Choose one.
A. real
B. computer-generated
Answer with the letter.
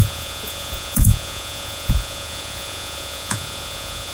B